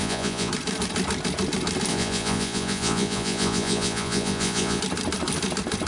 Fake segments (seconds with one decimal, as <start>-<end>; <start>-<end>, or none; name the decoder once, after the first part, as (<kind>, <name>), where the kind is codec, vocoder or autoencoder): 0.0-0.5 (vocoder, Vocos); 1.9-4.8